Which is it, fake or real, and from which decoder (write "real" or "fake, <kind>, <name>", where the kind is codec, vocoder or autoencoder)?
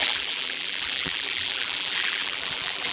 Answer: fake, vocoder, BigVGAN v2